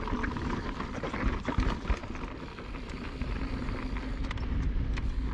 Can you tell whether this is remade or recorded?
recorded